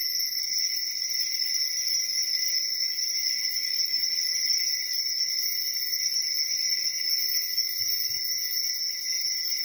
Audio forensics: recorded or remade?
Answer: recorded